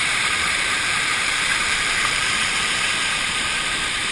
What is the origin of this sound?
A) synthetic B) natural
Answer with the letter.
A